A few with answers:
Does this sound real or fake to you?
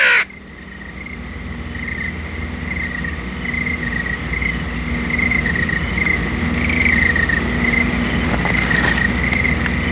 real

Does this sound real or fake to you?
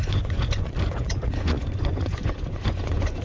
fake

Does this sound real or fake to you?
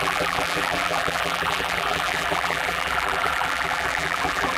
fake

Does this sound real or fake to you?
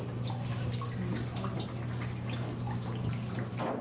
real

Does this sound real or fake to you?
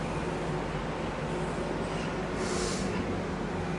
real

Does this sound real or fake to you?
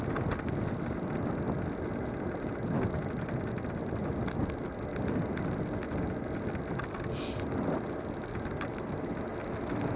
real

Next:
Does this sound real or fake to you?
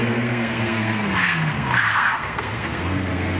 fake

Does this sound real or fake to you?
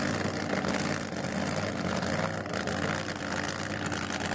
real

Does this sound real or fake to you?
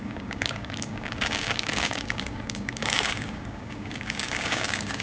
fake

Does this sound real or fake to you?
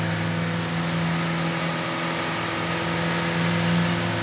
real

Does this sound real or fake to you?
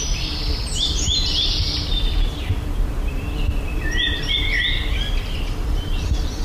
fake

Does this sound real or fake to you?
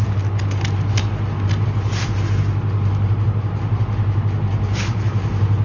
real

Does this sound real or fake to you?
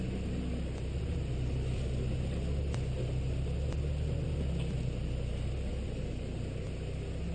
real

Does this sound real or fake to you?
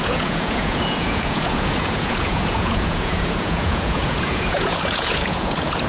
fake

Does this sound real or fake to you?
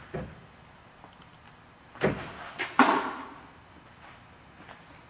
real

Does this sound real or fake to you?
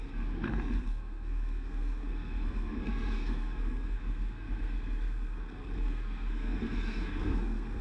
fake